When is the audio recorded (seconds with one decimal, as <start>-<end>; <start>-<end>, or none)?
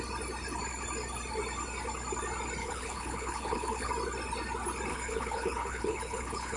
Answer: 0.0-2.6; 3.9-4.9